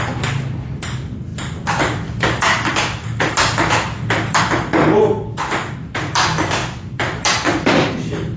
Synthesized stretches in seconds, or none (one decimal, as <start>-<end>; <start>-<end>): 1.3-4.4

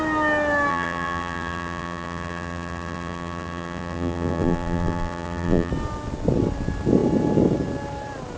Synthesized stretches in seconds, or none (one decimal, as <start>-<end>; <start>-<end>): 0.7-5.7

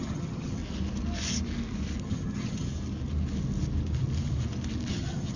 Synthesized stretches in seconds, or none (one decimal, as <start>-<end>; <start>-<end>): 0.0-0.6; 2.0-2.7; 4.9-5.4

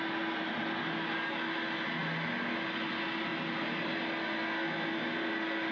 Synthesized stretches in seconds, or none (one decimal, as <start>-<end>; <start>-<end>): none

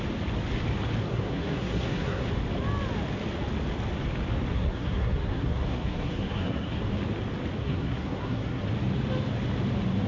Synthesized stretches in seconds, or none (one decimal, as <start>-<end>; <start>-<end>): 1.1-2.3; 4.5-6.8; 7.6-8.6

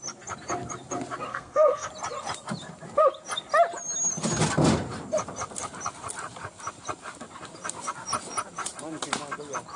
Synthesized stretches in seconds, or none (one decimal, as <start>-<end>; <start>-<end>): 1.3-1.9